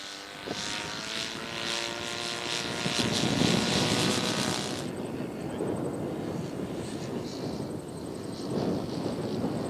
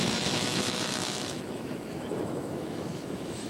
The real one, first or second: first